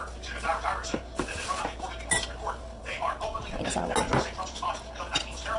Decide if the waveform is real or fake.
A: real